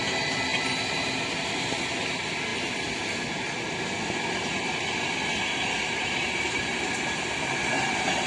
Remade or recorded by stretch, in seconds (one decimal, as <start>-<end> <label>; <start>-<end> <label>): 0.0-8.3 recorded